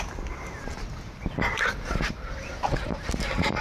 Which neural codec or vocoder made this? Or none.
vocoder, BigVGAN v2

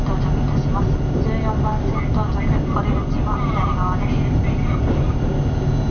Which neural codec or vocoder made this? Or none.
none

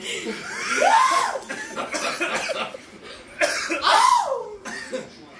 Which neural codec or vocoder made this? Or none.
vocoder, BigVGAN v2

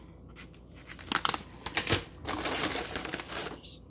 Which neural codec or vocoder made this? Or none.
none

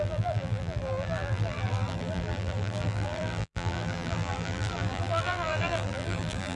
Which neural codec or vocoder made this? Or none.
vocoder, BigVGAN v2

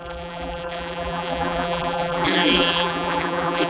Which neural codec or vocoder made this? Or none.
vocoder, BigVGAN v2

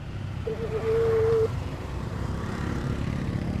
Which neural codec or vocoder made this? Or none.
vocoder, BigVGAN v2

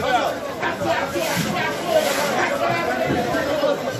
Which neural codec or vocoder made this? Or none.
none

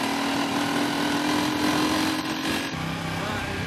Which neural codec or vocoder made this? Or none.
none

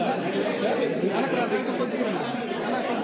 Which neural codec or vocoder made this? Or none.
vocoder, BigVGAN v2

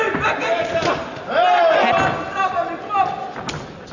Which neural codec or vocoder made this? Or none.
none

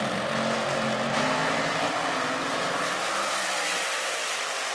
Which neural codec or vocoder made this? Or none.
vocoder, BigVGAN v2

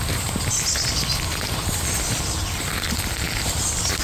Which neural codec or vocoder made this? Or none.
vocoder, BigVGAN v2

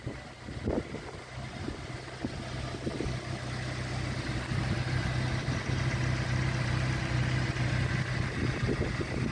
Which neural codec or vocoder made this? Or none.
none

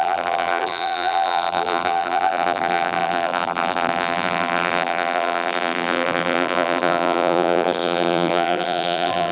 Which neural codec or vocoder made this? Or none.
vocoder, BigVGAN v2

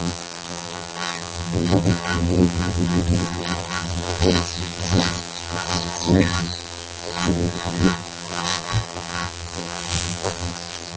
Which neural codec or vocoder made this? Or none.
vocoder, BigVGAN v2